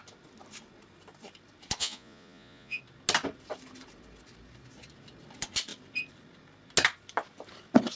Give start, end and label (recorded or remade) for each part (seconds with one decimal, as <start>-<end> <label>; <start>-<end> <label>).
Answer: 0.0-1.8 recorded; 1.8-2.8 remade; 2.8-8.0 recorded